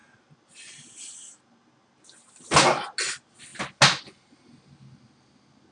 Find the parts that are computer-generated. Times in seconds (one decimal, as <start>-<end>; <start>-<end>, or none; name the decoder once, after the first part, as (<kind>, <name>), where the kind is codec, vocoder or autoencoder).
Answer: none